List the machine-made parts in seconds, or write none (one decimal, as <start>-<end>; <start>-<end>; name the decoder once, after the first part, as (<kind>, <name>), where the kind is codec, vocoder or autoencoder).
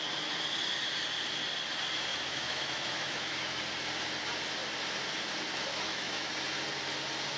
2.1-3.6 (autoencoder, DAC-VAE); 5.7-6.3